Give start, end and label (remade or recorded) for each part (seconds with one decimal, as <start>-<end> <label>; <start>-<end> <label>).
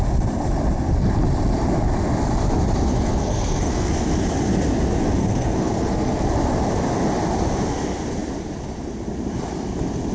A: 0.0-2.9 recorded; 2.9-3.9 remade; 3.9-5.2 recorded; 5.2-6.2 remade; 6.2-10.1 recorded